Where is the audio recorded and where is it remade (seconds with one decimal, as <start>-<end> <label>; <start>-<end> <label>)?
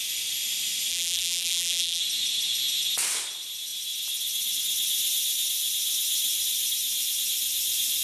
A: 0.0-0.9 recorded; 0.9-2.0 remade; 2.0-8.0 recorded